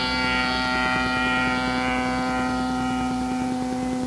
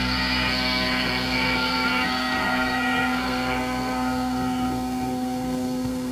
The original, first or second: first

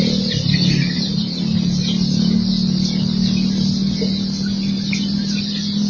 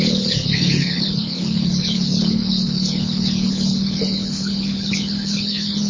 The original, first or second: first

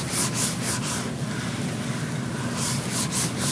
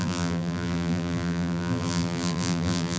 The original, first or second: first